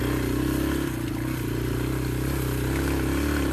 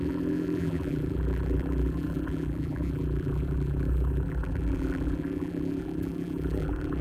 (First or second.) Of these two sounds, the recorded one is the first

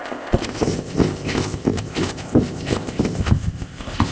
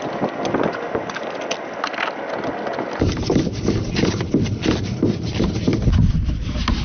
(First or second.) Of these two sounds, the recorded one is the second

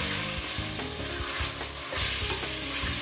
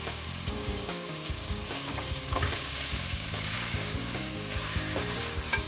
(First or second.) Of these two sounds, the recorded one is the first